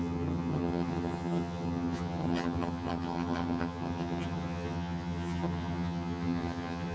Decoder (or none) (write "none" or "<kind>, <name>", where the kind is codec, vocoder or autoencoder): vocoder, HiFi-GAN